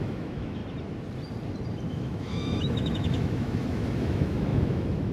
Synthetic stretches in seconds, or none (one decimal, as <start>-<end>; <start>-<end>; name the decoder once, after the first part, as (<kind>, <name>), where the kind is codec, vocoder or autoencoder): 0.0-0.6 (autoencoder, DAC-VAE); 1.9-5.1